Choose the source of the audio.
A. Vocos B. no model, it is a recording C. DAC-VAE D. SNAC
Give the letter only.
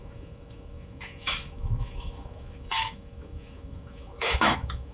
C